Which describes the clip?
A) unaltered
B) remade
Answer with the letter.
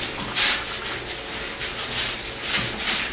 A